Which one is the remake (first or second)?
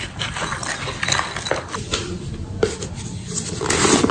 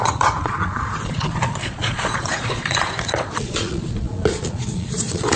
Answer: second